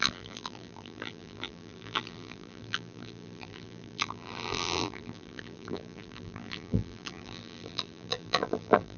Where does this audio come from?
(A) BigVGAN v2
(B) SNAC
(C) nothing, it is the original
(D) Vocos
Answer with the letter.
A